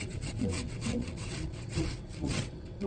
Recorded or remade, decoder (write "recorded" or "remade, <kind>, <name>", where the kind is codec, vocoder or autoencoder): remade, vocoder, WaveNeXt